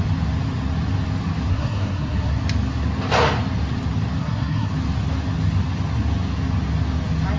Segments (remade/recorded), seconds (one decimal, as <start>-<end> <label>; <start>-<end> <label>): 0.0-1.5 recorded; 1.5-2.4 remade; 2.4-4.2 recorded; 4.2-4.7 remade; 4.7-7.4 recorded